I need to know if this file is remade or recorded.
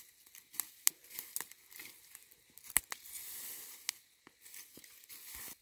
recorded